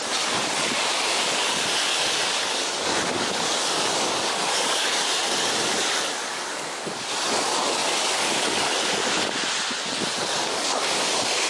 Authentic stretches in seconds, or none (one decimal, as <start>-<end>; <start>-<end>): 9.0-10.2

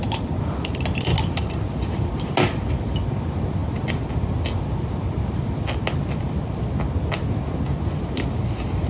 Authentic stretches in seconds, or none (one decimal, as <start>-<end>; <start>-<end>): 0.0-8.9